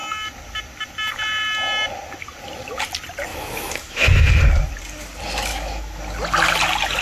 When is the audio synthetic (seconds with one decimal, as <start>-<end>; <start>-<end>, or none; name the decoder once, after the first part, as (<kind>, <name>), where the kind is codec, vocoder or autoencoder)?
3.3-4.4 (autoencoder, DAC-VAE); 5.5-6.0